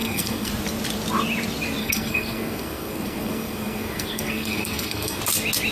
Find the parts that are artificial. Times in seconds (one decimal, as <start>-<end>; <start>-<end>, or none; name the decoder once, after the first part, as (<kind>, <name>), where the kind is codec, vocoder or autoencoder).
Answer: 0.0-0.5 (codec, SNAC); 1.8-5.2